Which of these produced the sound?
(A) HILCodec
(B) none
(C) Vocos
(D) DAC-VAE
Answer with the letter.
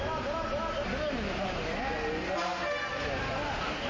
B